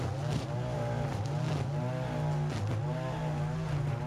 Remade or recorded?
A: recorded